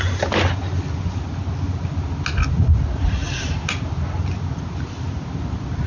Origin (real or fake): real